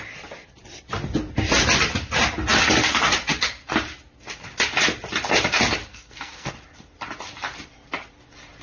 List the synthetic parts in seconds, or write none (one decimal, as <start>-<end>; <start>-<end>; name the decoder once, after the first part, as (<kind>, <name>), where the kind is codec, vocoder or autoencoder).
5.9-6.5 (codec, SNAC)